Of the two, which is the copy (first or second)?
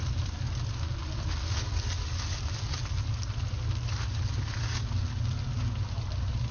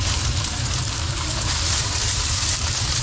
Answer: second